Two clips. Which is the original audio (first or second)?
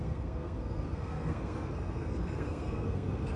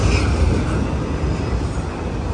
second